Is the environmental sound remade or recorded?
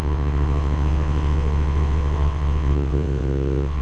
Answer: remade